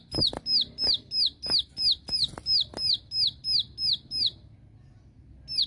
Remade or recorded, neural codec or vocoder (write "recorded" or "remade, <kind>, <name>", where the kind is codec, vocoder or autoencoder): recorded